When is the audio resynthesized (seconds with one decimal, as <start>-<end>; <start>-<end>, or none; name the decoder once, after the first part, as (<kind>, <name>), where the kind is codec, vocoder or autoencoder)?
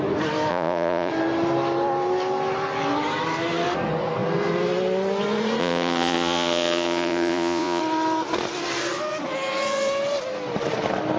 0.5-1.1 (vocoder, Vocos); 5.6-7.8